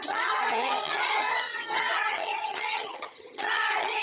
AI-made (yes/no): yes